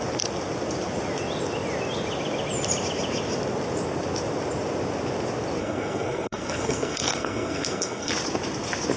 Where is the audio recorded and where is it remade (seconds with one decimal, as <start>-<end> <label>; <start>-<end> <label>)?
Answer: 0.0-5.6 recorded; 5.6-8.1 remade; 8.1-9.0 recorded